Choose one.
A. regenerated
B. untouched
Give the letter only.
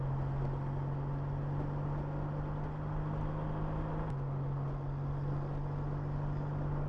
B